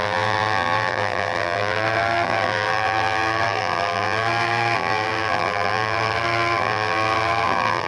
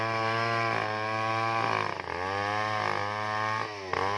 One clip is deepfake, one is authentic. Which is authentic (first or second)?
second